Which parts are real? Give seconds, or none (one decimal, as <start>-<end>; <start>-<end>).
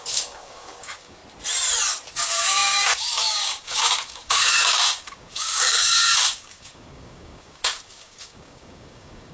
1.2-2.1